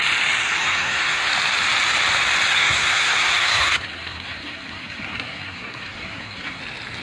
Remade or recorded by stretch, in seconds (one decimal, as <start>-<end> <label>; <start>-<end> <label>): 0.0-0.6 recorded; 0.6-1.3 remade; 1.3-2.5 recorded; 2.5-6.6 remade; 6.6-7.0 recorded